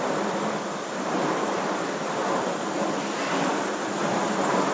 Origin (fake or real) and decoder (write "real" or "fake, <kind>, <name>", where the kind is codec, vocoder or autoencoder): real